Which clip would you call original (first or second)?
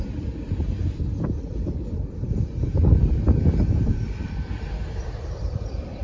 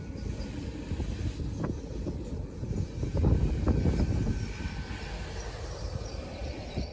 second